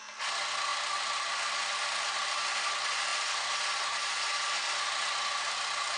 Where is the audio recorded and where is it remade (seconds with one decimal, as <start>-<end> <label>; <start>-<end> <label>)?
0.0-6.0 recorded